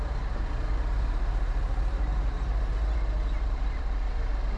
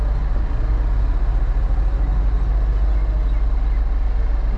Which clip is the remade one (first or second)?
first